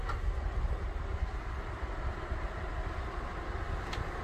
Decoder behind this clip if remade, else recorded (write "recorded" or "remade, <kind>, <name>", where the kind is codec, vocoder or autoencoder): recorded